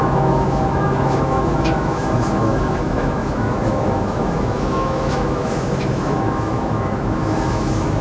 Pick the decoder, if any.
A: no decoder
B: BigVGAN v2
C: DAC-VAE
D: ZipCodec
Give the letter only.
C